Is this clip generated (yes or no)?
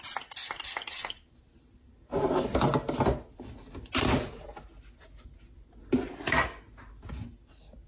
no